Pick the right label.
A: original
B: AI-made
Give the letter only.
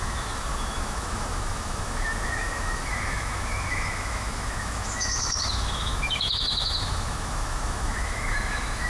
B